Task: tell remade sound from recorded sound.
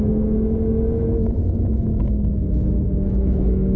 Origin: remade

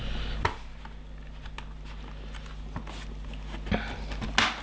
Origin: recorded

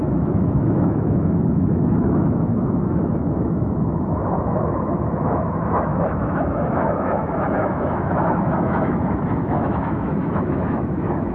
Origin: remade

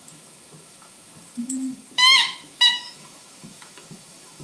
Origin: remade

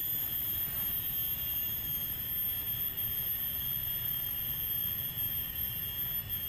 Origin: recorded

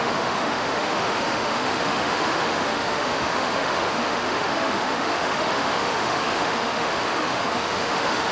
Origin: remade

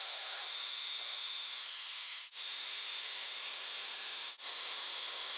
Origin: remade